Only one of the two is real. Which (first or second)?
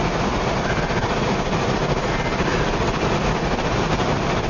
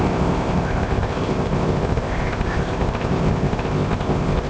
first